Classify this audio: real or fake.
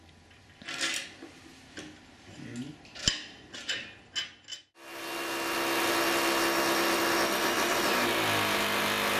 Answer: real